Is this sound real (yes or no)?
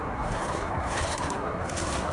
no